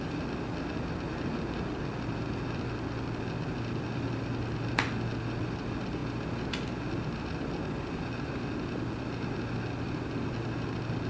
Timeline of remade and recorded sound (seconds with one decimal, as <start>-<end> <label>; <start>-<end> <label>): 0.0-11.1 recorded